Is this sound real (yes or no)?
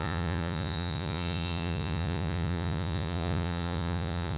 no